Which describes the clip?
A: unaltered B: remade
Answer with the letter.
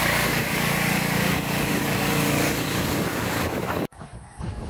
B